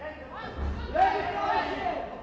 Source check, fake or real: real